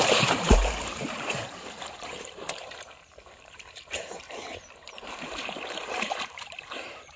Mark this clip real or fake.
fake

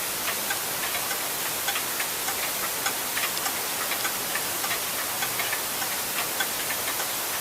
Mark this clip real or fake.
real